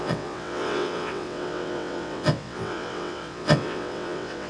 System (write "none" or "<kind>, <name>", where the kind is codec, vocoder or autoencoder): vocoder, WaveNeXt